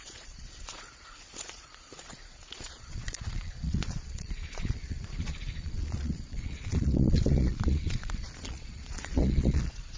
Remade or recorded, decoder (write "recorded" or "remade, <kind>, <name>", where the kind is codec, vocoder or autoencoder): remade, vocoder, Vocos